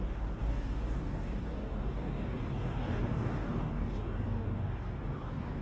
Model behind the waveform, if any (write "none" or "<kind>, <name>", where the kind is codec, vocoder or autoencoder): codec, DAC